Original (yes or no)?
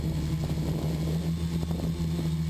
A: yes